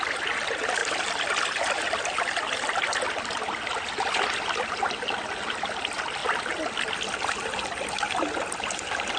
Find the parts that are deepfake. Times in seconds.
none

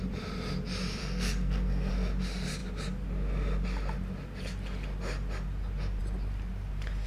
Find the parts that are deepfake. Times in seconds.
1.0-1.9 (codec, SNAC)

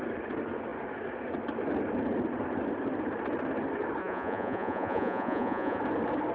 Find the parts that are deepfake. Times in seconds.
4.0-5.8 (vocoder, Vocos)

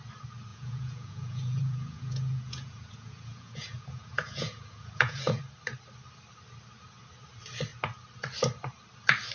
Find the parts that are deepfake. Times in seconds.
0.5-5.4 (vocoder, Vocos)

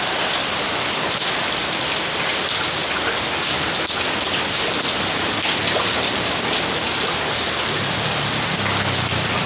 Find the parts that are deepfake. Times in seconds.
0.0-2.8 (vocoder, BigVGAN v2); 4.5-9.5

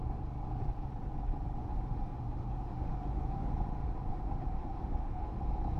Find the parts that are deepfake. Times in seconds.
1.6-3.5 (autoencoder, DAC-VAE); 4.1-5.3

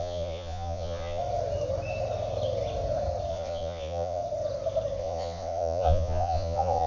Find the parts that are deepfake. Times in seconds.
0.0-1.2 (vocoder, Vocos); 3.3-4.2; 5.0-6.9